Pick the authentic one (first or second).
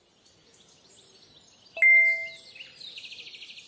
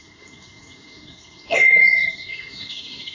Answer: first